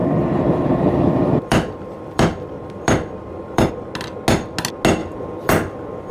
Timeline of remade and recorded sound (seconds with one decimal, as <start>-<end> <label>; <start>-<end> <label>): 0.0-3.7 remade; 3.7-5.0 recorded; 5.0-6.1 remade